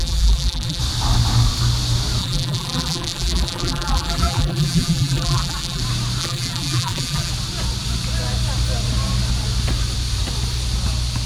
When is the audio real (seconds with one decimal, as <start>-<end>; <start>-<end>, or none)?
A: 0.8-2.2; 5.8-6.2; 7.3-11.3